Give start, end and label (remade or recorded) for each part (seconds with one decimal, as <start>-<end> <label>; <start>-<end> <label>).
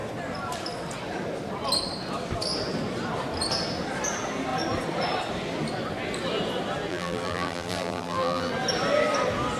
0.0-6.9 recorded; 6.9-8.5 remade; 8.5-9.6 recorded